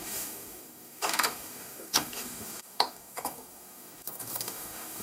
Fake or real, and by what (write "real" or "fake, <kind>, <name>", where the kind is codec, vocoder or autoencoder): fake, codec, DAC